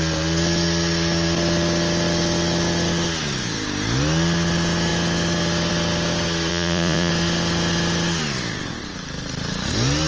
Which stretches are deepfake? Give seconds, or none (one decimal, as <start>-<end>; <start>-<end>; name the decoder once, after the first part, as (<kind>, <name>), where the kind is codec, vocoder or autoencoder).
6.5-7.1 (vocoder, Vocos)